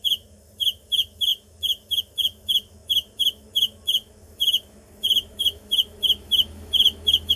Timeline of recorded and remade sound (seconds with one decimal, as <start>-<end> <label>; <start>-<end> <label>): 0.0-7.4 remade